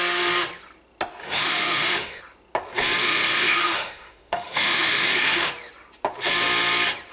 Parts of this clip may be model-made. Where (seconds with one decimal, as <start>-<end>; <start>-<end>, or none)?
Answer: 1.2-2.2; 3.0-5.5